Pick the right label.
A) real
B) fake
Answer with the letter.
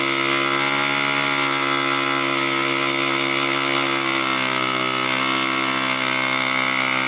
A